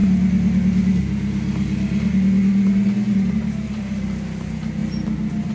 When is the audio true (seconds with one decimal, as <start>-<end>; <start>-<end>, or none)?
0.0-5.5